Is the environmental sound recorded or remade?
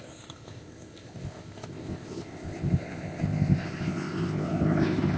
remade